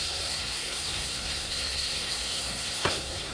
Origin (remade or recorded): remade